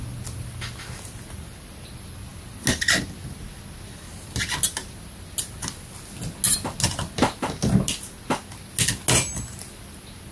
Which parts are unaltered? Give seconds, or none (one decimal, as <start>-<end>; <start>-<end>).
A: 0.0-10.3